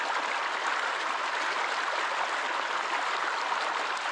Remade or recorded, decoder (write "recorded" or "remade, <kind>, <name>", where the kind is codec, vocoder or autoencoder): recorded